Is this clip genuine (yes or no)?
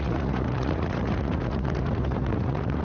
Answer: no